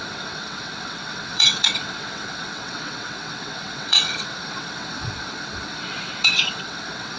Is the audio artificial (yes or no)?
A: yes